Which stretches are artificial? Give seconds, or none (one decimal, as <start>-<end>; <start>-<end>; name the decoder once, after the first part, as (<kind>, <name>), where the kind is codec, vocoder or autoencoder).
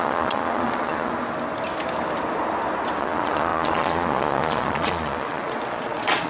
0.0-1.1 (vocoder, Vocos); 3.0-6.3